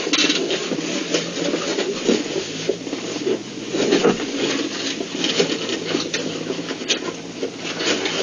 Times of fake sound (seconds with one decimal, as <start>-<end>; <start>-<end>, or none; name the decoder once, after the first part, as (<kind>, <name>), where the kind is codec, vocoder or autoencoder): 1.7-2.3 (vocoder, Vocos); 3.4-4.5